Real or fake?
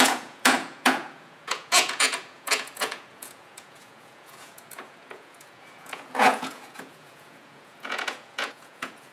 fake